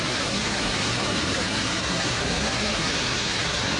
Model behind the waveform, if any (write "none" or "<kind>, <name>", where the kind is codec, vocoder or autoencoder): codec, SNAC